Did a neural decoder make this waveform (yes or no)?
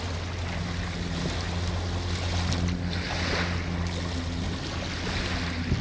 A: no